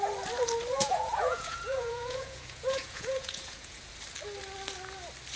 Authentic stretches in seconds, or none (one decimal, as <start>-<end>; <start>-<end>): 0.0-0.7; 3.9-5.4